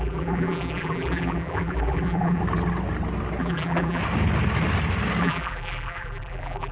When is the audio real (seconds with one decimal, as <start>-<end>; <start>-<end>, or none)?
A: 2.4-3.4; 4.0-5.2